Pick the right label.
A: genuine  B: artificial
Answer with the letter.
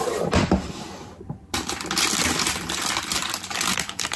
B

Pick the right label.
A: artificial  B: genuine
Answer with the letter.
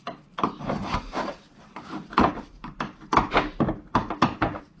A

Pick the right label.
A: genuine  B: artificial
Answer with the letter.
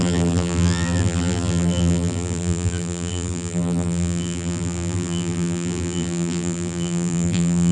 B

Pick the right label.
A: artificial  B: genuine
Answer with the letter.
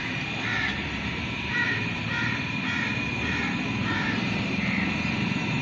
A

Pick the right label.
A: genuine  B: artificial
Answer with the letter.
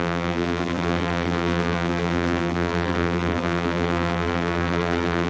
B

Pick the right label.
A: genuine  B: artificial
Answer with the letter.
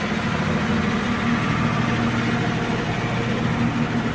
A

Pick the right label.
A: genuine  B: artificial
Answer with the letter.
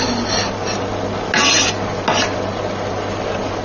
A